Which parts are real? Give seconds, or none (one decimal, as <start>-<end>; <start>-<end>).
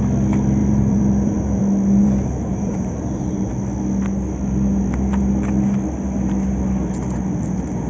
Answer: 0.0-0.6; 1.6-2.0; 3.5-7.9